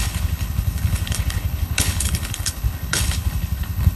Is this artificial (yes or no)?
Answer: yes